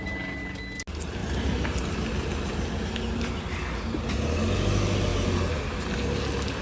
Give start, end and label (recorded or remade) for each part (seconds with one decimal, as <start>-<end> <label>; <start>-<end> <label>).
0.0-6.6 recorded